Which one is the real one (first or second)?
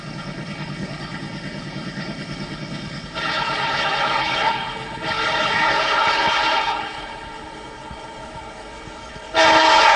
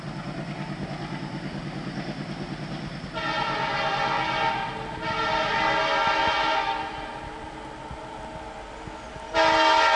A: second